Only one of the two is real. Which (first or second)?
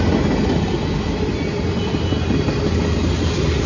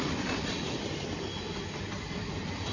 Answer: first